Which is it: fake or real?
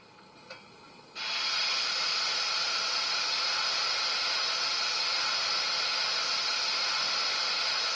real